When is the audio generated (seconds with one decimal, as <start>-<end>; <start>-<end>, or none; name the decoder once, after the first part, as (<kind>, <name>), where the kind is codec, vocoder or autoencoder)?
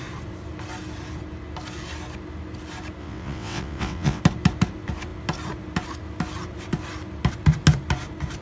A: 3.0-4.2 (vocoder, WaveNeXt)